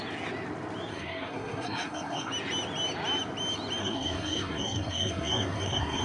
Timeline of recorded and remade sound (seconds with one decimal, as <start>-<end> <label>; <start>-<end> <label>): 0.0-0.9 recorded; 0.9-2.3 remade; 2.3-3.8 recorded; 3.8-6.0 remade

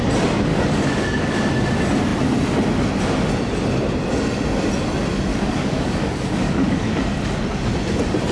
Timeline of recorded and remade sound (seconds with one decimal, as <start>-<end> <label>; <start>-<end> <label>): 0.0-0.5 recorded; 0.5-1.5 remade; 1.5-5.3 recorded; 5.3-7.2 remade; 7.2-8.3 recorded

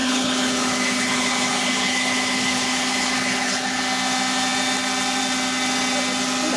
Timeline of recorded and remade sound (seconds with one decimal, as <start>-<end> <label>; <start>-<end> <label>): 0.0-3.8 remade; 3.8-6.6 recorded

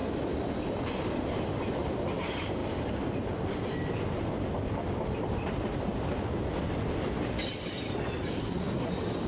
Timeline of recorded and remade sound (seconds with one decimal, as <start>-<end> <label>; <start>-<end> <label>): 0.0-8.4 recorded; 8.4-8.9 remade; 8.9-9.3 recorded

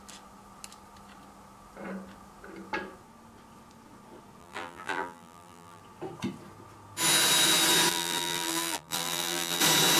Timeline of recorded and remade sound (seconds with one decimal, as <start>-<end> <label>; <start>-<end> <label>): 0.0-4.4 recorded; 4.4-5.8 remade; 5.8-7.9 recorded; 7.9-9.6 remade; 9.6-10.0 recorded

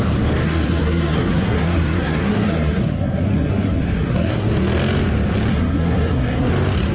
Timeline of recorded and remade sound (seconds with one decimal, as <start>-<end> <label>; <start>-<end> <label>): 0.0-0.4 recorded; 0.4-4.5 remade; 4.5-5.5 recorded; 5.5-6.5 remade; 6.5-6.9 recorded

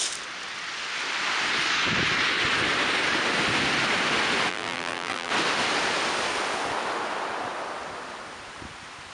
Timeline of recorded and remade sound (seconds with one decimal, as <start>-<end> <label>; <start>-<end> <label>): 0.0-4.5 recorded; 4.5-5.3 remade; 5.3-9.1 recorded

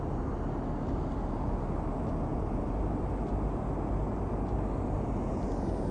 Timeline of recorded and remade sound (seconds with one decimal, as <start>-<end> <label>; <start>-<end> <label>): 0.0-5.9 recorded